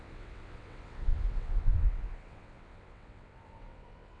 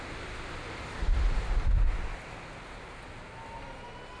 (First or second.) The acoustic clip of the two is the second